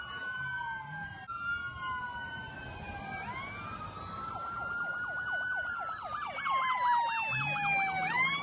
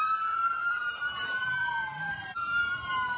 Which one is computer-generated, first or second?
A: second